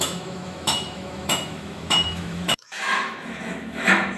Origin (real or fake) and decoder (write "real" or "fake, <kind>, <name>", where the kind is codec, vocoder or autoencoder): fake, autoencoder, DAC-VAE